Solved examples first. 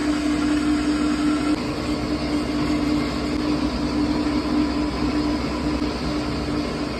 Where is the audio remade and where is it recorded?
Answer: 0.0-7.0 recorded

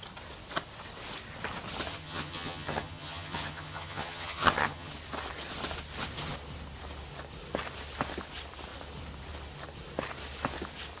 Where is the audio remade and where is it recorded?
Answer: 0.0-1.9 recorded; 1.9-4.9 remade; 4.9-11.0 recorded

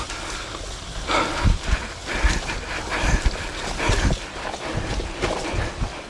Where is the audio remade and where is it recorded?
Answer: 0.0-6.1 recorded

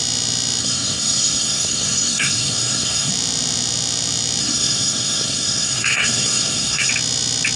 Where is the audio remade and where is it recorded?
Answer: 0.0-0.6 recorded; 0.6-3.1 remade; 3.1-4.4 recorded; 4.4-6.9 remade; 6.9-7.6 recorded

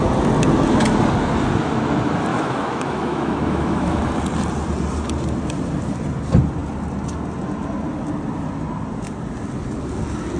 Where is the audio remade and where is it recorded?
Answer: 0.0-2.3 recorded; 2.3-4.0 remade; 4.0-10.4 recorded

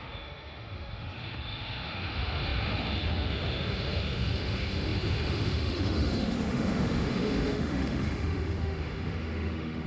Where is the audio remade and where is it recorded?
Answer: 0.0-9.9 remade

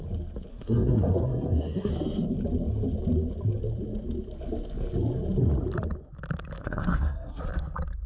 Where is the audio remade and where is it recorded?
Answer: 0.0-0.5 recorded; 0.5-1.9 remade; 1.9-6.6 recorded; 6.6-7.4 remade; 7.4-8.1 recorded

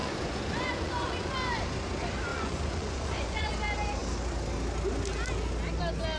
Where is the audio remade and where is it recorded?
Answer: 0.0-1.3 remade; 1.3-2.3 recorded; 2.3-3.5 remade; 3.5-6.2 recorded